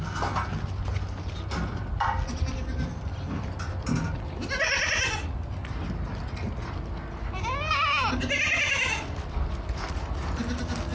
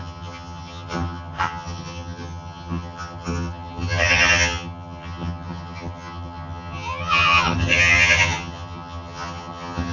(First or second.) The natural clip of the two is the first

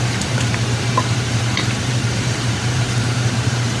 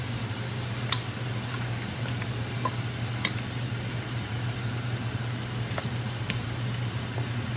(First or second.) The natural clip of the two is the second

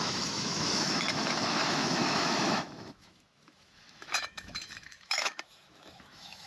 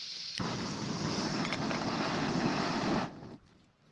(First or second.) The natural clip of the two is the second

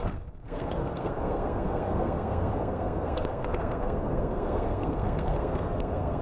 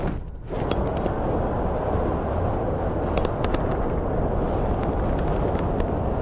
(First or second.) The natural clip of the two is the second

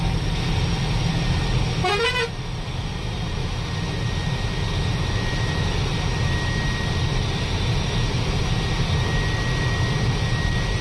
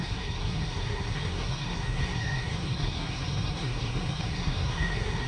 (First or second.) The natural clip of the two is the first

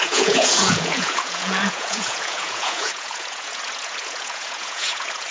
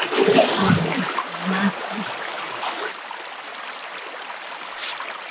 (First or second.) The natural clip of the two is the second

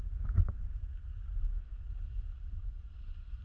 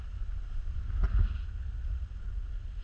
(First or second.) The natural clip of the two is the second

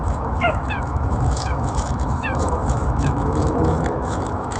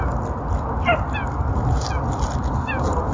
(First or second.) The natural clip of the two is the second